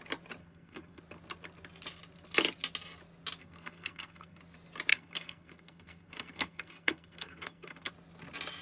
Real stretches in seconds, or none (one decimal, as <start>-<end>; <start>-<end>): 0.0-0.4; 1.0-3.4; 4.4-4.9; 7.9-8.6